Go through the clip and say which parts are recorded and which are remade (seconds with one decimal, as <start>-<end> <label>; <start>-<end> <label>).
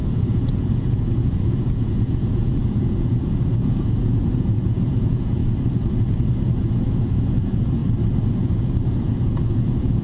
0.0-5.4 remade; 5.4-6.6 recorded; 6.6-7.8 remade; 7.8-8.3 recorded; 8.3-10.0 remade